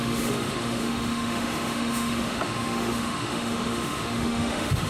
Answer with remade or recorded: remade